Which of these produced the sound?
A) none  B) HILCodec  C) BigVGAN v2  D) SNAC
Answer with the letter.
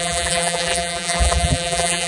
C